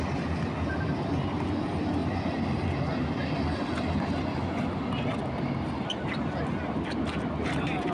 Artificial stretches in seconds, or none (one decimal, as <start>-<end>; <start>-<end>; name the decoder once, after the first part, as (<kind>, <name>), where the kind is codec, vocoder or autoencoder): none